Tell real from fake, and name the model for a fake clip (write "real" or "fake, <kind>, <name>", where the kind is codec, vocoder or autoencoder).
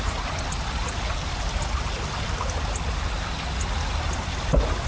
real